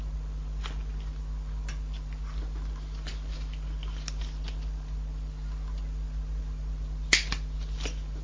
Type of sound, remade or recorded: recorded